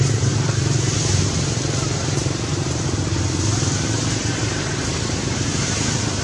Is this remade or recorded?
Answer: remade